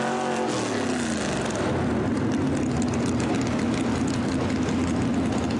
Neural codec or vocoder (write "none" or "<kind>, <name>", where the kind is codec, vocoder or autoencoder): none